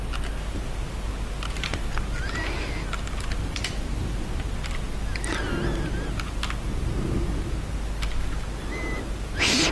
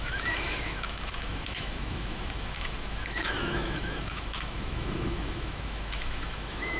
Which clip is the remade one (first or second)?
second